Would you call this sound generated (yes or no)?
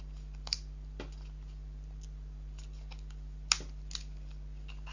no